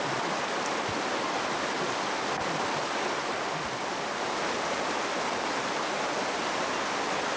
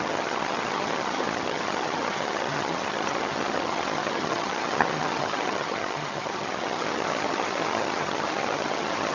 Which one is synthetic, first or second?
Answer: second